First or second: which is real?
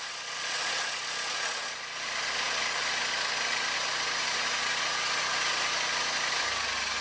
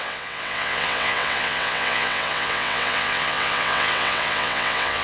first